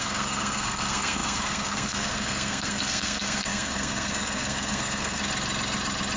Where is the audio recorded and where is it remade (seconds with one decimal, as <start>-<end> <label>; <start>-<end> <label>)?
0.0-5.2 remade; 5.2-6.2 recorded